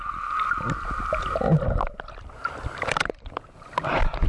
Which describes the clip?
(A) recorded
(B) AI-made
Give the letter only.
A